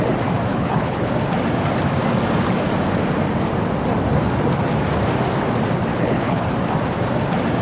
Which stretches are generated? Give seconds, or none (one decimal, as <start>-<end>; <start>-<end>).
0.5-1.1; 5.9-6.5